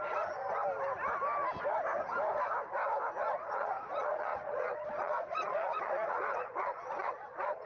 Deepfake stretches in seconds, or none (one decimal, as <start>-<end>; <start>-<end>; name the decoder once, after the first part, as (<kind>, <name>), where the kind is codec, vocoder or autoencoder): 0.0-0.4 (vocoder, Vocos); 3.5-7.7

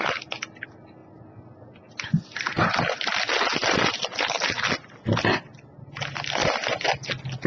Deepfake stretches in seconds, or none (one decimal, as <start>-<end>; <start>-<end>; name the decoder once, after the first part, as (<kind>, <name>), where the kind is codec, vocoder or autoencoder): none

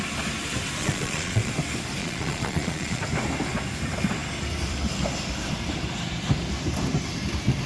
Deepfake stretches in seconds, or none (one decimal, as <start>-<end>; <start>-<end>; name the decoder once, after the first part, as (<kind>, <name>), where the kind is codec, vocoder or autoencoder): 0.8-1.5 (vocoder, Vocos); 2.0-3.0

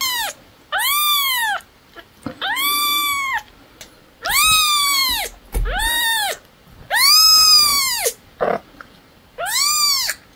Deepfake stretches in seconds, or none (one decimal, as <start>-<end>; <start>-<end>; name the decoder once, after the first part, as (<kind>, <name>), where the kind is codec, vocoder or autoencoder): none